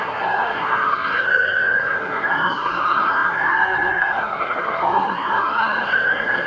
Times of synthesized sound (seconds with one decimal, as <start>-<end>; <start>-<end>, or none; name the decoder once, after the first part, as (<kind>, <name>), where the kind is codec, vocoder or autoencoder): 0.0-6.5 (codec, SNAC)